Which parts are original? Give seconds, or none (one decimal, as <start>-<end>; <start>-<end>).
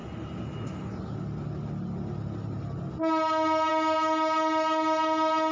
0.0-5.5